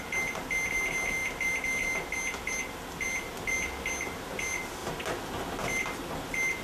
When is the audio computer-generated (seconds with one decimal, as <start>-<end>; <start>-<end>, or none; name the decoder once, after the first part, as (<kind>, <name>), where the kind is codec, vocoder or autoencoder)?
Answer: none